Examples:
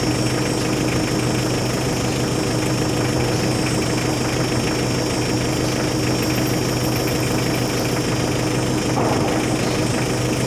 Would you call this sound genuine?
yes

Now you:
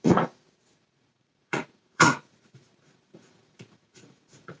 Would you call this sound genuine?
no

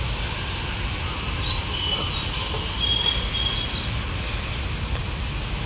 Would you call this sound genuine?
yes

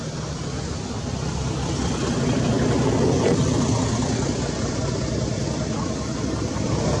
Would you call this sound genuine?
yes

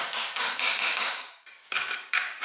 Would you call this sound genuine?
no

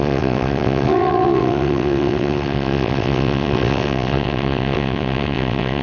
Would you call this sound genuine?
no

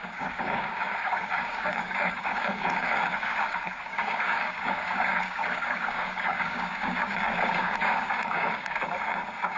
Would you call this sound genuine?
no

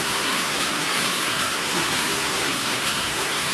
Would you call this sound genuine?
no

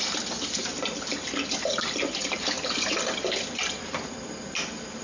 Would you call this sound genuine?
yes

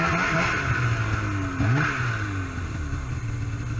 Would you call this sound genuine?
yes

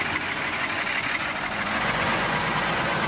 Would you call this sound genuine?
no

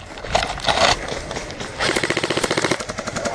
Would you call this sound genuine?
no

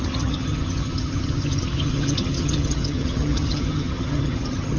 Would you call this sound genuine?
no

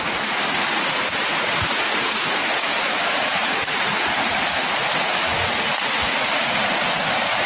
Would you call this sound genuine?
no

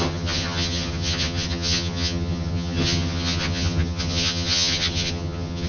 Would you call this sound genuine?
no